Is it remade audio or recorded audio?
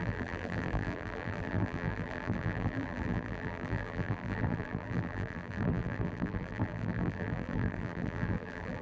remade